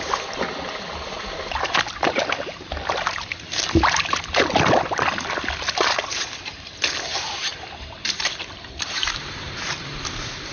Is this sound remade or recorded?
recorded